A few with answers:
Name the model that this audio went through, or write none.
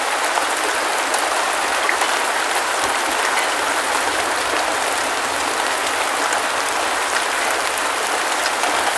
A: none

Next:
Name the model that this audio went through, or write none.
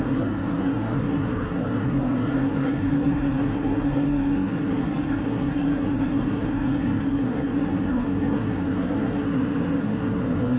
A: codec, SNAC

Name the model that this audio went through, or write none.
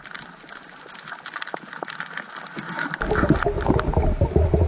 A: none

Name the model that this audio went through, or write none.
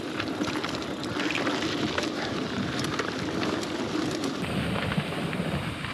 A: none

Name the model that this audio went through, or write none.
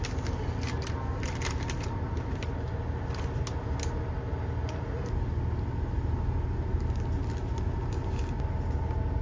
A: none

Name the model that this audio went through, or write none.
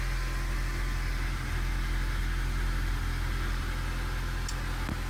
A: none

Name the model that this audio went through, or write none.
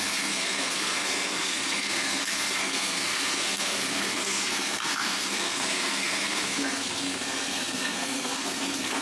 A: codec, SNAC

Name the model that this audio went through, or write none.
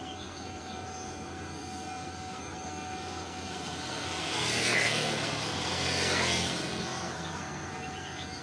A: codec, SNAC